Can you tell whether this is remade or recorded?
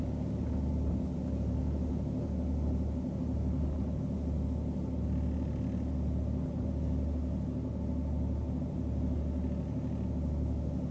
recorded